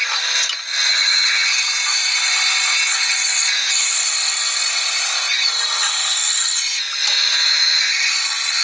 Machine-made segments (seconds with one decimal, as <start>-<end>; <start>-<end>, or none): 0.9-1.5